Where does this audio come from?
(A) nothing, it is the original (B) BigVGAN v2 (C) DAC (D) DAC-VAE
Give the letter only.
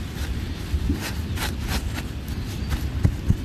A